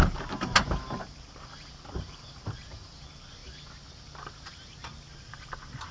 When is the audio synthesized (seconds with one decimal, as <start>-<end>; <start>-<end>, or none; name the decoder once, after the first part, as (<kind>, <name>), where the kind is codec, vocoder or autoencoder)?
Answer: none